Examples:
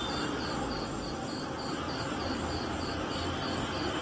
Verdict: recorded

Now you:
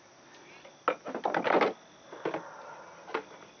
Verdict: recorded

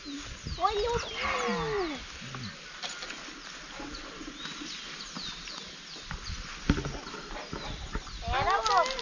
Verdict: recorded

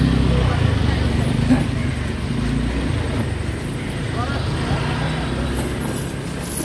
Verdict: recorded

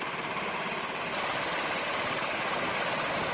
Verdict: recorded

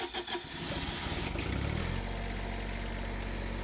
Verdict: recorded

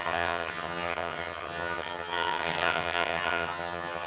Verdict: remade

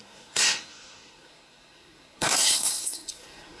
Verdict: remade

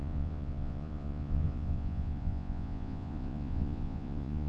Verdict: remade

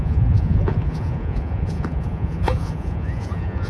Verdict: remade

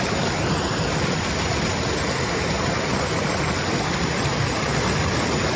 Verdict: recorded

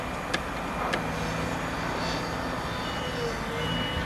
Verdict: recorded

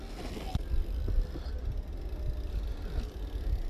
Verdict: recorded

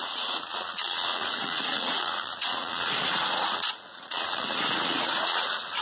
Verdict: remade